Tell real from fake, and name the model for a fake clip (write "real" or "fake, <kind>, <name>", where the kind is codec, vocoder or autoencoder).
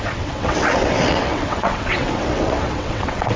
fake, vocoder, WaveNeXt